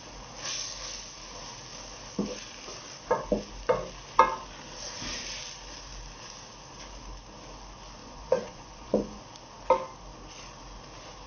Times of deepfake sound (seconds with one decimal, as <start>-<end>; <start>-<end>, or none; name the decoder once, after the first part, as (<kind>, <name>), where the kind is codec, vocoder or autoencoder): 8.0-9.2 (vocoder, Vocos)